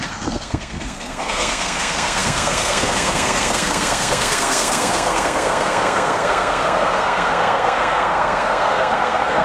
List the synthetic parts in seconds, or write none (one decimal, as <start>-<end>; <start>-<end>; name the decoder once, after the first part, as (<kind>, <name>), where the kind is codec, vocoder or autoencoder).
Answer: 0.0-9.4 (codec, SNAC)